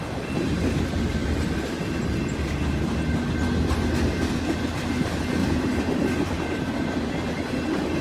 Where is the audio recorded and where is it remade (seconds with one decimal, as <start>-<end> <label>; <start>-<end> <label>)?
0.0-5.4 recorded; 5.4-6.7 remade; 6.7-8.0 recorded